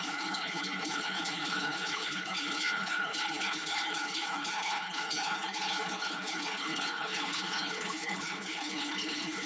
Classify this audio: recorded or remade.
remade